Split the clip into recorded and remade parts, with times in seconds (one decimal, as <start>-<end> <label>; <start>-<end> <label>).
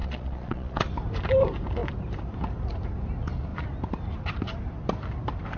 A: 0.0-0.9 remade; 0.9-5.6 recorded